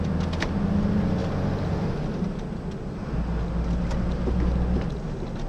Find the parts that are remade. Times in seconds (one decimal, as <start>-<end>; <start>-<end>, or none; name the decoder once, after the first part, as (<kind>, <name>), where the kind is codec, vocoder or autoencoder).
1.2-2.2 (vocoder, BigVGAN v2)